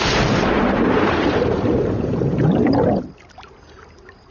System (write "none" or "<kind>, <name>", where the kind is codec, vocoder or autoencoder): vocoder, BigVGAN v2